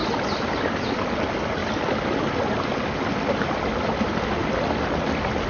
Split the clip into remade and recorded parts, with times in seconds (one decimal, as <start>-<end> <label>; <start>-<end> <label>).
0.0-5.5 recorded